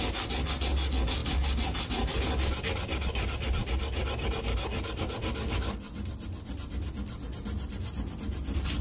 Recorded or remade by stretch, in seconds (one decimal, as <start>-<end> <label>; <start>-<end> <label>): 0.0-8.8 recorded